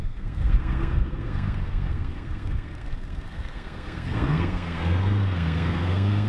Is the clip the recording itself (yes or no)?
no